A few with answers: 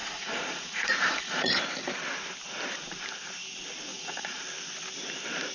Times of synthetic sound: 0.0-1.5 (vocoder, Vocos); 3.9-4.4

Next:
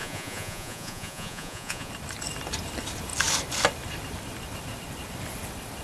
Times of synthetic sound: 0.0-1.9 (vocoder, Vocos)